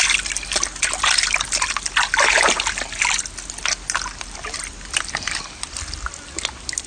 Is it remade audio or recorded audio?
recorded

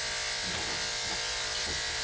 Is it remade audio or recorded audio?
recorded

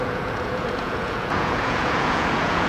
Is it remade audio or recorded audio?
remade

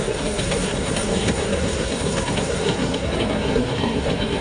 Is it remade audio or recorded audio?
remade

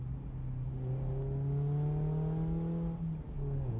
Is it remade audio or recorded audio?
recorded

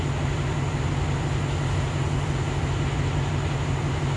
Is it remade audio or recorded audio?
recorded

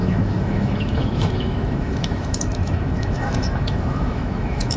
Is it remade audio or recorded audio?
remade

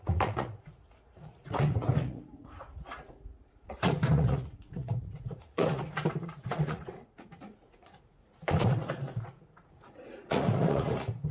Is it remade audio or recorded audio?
remade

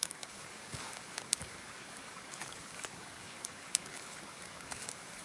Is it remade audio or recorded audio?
remade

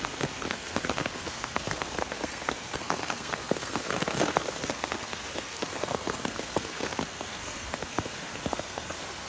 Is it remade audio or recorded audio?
remade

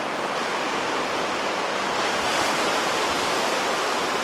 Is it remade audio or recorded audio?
recorded